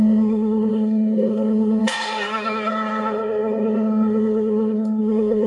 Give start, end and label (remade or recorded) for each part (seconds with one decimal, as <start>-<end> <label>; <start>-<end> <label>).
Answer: 0.0-5.5 remade